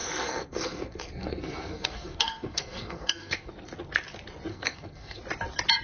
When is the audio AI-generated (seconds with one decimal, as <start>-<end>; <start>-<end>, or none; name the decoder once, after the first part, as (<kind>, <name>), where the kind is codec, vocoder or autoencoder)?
0.0-3.5 (codec, SNAC); 4.5-5.2